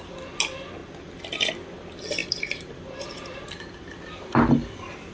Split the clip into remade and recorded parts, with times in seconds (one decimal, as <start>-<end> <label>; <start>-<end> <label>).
0.0-2.2 recorded; 2.2-3.6 remade; 3.6-5.1 recorded